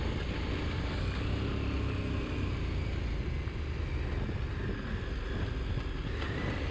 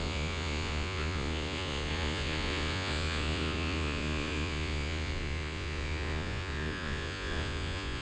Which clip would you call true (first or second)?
first